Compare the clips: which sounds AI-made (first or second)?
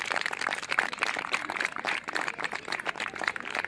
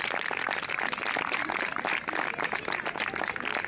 first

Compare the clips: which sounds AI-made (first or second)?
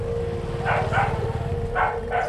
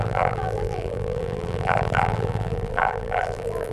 second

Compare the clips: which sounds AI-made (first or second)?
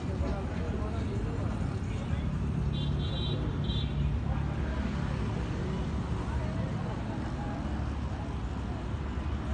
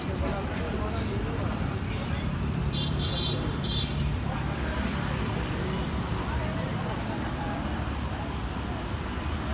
second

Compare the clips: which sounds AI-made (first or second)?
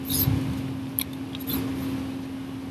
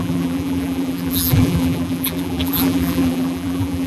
second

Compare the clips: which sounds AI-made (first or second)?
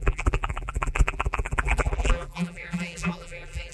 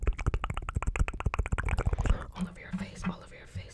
first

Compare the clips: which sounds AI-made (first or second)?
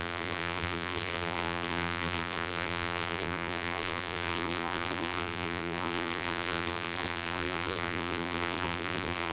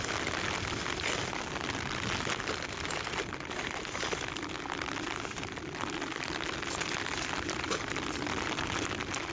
first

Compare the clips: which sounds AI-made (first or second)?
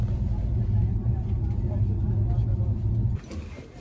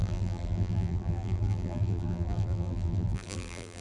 second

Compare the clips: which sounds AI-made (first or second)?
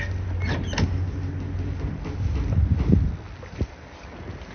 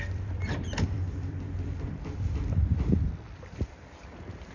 second